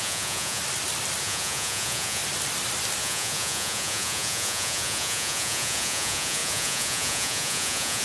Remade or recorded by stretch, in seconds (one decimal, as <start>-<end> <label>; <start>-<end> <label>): 0.0-0.6 remade; 0.6-1.2 recorded; 1.2-2.2 remade; 2.2-3.0 recorded; 3.0-8.0 remade